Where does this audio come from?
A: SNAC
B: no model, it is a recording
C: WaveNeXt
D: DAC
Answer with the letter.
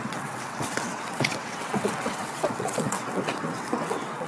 C